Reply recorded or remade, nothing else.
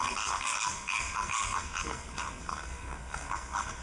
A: remade